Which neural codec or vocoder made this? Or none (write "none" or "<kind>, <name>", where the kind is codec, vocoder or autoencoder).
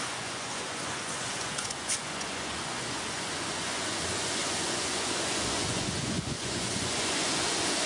vocoder, Vocos